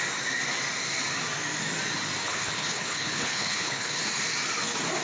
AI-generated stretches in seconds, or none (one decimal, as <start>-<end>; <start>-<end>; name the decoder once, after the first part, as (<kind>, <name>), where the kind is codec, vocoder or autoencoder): 2.2-4.0 (codec, HILCodec)